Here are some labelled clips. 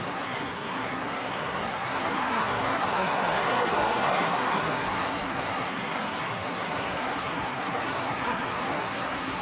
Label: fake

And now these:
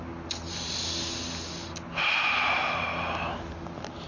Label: real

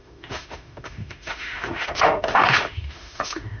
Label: fake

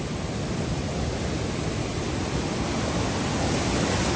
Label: real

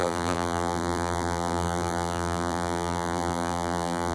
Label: fake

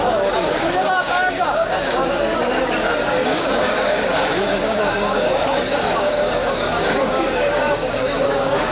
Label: fake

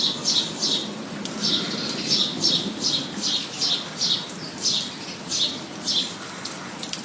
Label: real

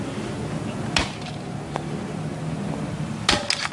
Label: real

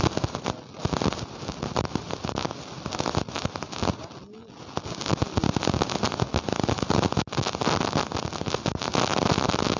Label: real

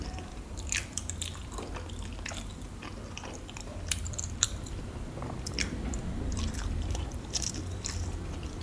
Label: fake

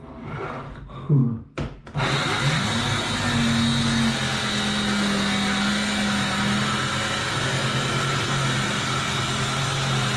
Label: real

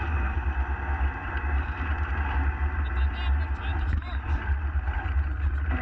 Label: real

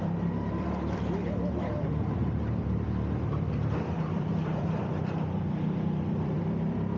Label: fake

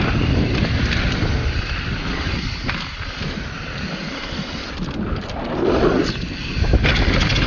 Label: real